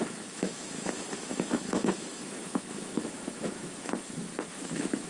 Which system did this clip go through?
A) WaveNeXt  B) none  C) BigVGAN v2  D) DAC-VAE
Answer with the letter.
D